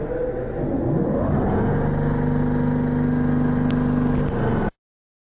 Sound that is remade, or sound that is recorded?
recorded